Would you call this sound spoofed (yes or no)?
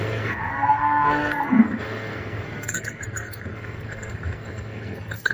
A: yes